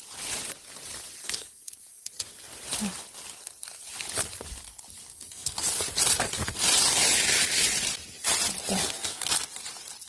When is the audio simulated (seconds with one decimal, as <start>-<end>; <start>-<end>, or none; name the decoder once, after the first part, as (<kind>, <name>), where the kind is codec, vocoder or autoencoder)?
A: 1.2-2.1 (codec, SNAC); 5.1-5.6; 8.8-9.3